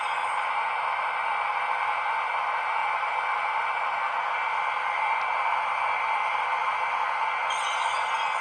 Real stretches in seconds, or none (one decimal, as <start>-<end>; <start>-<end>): 0.0-8.4